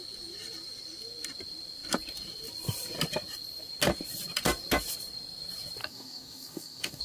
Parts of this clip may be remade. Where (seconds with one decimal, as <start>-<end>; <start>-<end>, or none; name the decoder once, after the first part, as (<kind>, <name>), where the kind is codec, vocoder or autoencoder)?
5.8-7.0 (codec, DAC)